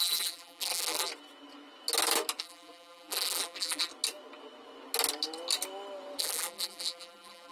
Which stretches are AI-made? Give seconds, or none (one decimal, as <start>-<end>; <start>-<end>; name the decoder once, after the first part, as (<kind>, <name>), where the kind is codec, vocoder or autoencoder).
0.0-1.1 (vocoder, BigVGAN v2); 2.4-3.9; 6.2-7.5

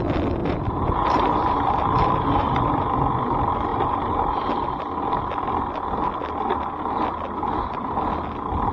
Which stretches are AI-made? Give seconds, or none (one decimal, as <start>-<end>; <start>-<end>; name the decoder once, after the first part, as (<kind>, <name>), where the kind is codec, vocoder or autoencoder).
0.4-2.9 (vocoder, BigVGAN v2); 3.7-4.5